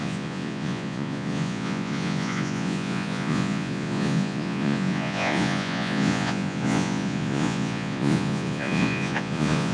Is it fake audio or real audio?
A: fake